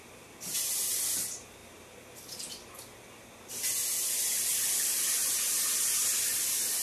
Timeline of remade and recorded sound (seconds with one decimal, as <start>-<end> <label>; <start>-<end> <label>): 0.0-6.8 recorded